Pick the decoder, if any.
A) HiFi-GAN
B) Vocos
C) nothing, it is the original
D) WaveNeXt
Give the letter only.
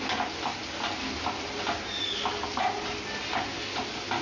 C